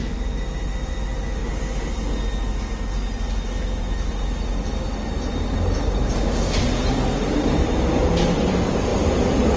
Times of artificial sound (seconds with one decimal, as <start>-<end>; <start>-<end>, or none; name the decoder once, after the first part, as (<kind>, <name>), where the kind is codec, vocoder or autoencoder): none